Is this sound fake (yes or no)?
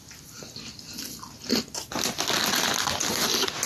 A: no